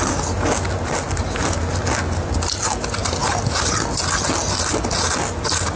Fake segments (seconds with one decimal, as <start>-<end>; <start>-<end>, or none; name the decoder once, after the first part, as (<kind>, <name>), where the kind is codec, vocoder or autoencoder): none